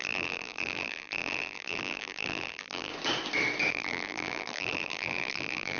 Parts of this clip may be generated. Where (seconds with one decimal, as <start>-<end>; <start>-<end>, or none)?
0.0-2.9; 3.7-5.8